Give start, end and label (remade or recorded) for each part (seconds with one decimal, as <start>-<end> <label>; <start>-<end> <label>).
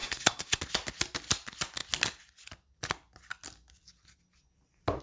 0.0-0.6 remade; 0.6-5.0 recorded